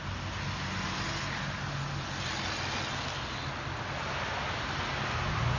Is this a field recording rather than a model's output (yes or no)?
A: yes